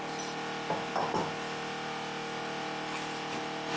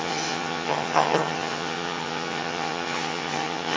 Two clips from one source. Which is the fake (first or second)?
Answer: second